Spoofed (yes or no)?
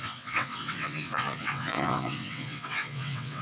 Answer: yes